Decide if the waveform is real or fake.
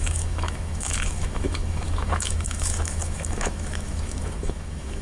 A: fake